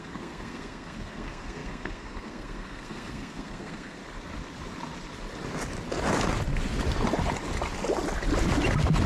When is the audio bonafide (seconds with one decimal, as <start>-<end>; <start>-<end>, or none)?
4.0-9.1